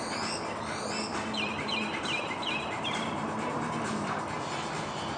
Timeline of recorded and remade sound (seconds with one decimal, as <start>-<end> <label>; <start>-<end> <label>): 0.0-1.1 recorded; 1.1-4.2 remade; 4.2-5.2 recorded